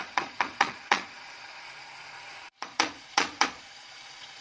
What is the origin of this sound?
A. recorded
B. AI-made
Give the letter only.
B